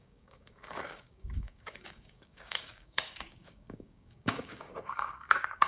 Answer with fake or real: fake